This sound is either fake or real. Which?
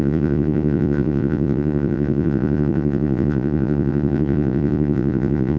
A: fake